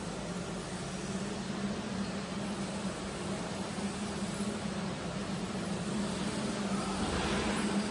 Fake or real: real